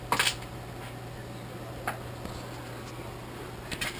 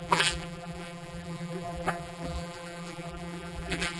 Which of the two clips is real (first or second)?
first